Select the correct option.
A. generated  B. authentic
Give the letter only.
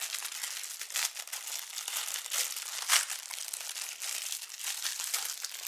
B